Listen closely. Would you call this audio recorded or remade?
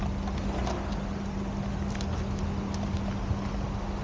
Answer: recorded